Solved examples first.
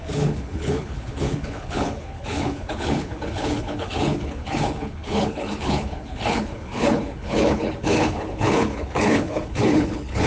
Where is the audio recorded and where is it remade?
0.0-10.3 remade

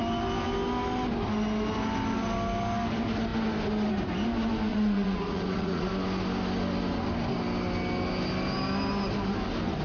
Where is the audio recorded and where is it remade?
0.0-4.7 recorded; 4.7-5.9 remade; 5.9-9.8 recorded

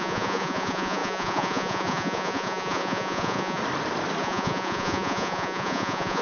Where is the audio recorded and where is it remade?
0.0-3.6 remade; 3.6-4.2 recorded; 4.2-6.2 remade